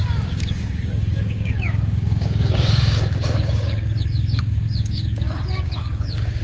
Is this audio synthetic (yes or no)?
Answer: yes